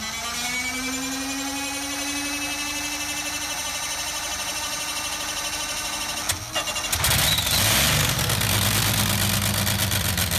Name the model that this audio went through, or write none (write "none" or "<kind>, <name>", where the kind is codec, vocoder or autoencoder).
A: none